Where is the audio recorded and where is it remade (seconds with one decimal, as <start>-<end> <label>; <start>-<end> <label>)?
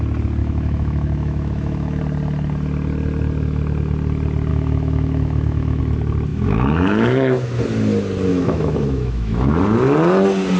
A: 0.0-0.4 recorded; 0.4-2.0 remade; 2.0-4.5 recorded; 4.5-5.8 remade; 5.8-6.3 recorded; 6.3-7.6 remade; 7.6-8.3 recorded; 8.3-9.6 remade; 9.6-10.6 recorded